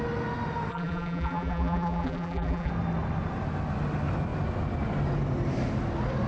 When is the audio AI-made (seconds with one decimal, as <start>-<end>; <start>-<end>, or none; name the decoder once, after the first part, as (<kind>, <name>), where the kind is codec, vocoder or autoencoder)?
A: 0.7-2.7 (vocoder, BigVGAN v2)